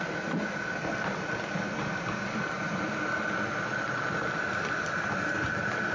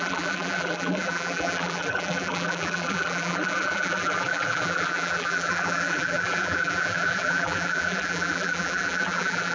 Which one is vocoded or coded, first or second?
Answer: second